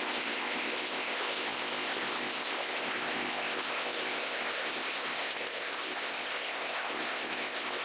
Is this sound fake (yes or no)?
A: yes